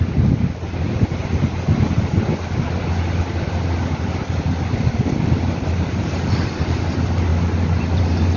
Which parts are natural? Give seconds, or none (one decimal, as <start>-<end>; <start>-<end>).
0.0-8.4